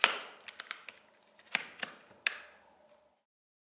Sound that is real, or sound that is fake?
real